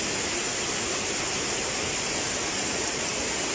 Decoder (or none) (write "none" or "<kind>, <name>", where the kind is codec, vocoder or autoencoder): none